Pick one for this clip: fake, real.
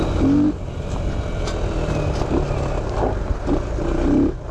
real